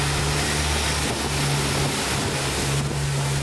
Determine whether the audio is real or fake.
real